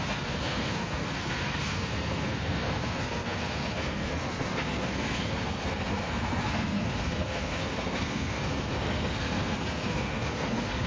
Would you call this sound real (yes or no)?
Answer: no